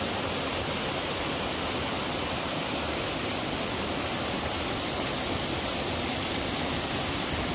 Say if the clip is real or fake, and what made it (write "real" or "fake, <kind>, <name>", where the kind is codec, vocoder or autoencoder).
real